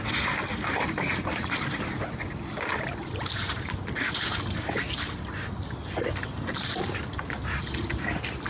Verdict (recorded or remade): recorded